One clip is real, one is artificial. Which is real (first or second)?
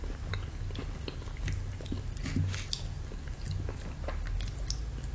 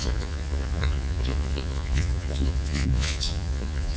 first